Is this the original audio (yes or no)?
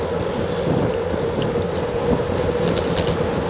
yes